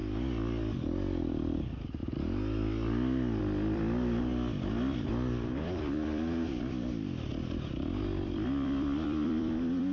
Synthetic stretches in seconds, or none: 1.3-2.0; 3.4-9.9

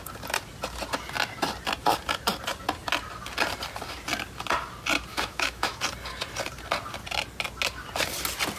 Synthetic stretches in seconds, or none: 5.1-5.8

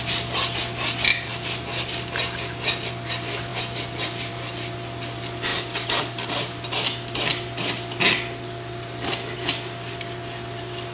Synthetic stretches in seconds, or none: 5.5-8.0

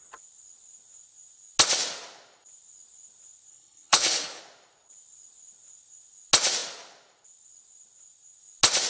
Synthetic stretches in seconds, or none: 3.5-4.4

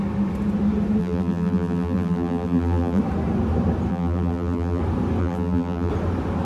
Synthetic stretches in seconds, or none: 1.0-3.0; 3.9-4.8; 5.2-5.9